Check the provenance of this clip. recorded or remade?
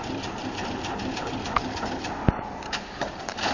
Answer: remade